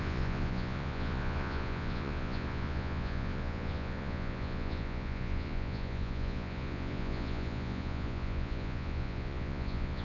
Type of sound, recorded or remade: remade